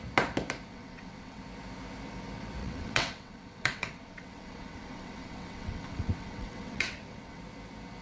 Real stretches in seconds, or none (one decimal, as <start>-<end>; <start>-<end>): 0.0-0.7; 1.4-2.6; 7.4-8.0